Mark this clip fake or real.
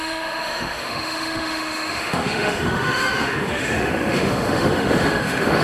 fake